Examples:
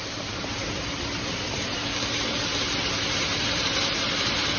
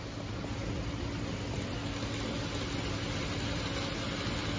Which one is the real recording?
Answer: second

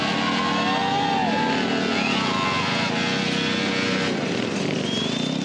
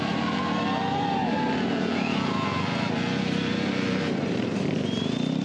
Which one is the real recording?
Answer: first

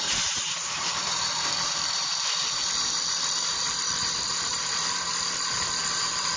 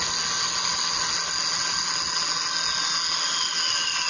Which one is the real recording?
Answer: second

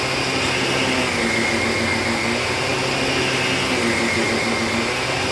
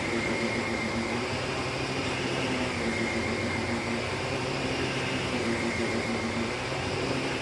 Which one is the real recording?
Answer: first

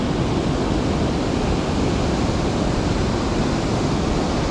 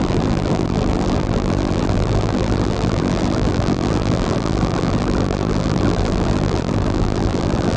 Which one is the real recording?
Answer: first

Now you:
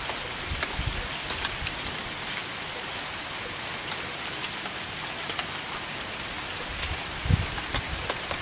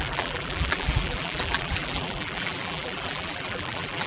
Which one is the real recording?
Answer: first